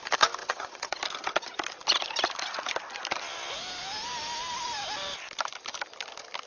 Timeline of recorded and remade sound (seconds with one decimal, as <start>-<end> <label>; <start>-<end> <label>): 0.0-0.4 recorded; 0.4-1.0 remade; 1.0-6.5 recorded